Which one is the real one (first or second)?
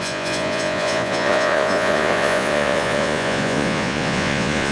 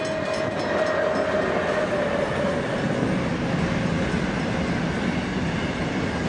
second